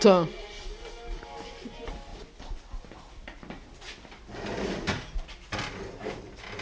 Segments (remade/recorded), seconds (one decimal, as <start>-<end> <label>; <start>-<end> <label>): 0.0-6.6 recorded